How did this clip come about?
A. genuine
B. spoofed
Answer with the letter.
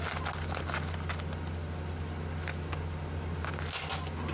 A